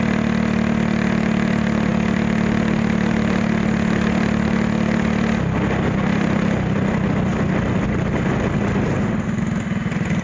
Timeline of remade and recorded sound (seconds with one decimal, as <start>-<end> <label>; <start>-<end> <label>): 0.0-10.2 recorded